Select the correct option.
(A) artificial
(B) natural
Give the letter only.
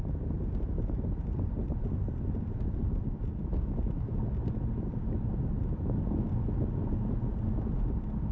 B